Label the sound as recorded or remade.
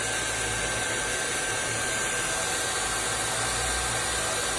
recorded